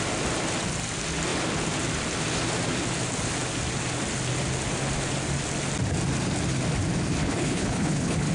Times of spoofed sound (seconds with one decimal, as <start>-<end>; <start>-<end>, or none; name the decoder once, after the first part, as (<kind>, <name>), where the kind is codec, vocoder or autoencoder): 7.2-8.3 (codec, HILCodec)